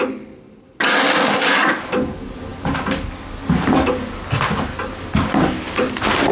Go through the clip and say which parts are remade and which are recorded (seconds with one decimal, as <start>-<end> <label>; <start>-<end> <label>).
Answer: 0.0-6.3 recorded